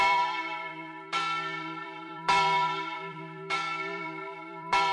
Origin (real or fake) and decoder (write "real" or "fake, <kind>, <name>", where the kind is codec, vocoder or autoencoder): fake, vocoder, BigVGAN v2